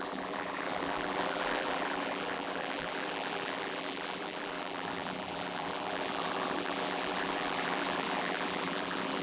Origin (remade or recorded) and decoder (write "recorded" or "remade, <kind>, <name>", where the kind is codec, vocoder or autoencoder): remade, vocoder, BigVGAN v2